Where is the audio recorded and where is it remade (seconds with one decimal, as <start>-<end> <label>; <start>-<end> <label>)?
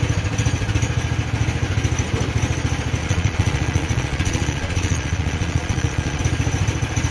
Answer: 0.0-3.0 recorded; 3.0-6.2 remade; 6.2-7.1 recorded